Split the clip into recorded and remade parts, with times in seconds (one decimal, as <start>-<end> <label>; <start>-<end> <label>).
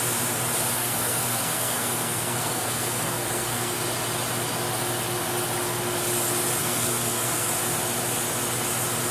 0.0-0.8 recorded; 0.8-3.8 remade; 3.8-6.6 recorded; 6.6-7.5 remade; 7.5-9.1 recorded